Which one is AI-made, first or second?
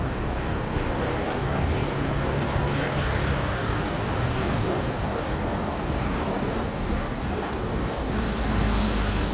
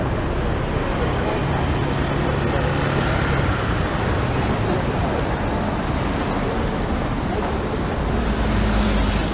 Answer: first